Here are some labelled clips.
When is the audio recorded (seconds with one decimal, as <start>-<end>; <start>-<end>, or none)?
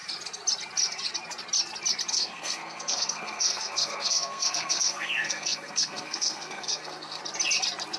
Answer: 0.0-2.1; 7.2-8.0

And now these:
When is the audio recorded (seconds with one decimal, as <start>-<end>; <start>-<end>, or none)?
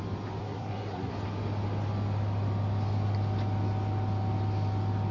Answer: 0.0-0.4; 1.1-5.1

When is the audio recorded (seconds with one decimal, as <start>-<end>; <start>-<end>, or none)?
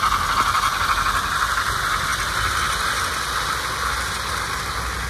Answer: 0.0-5.1